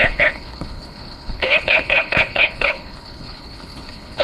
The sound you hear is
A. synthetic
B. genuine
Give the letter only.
A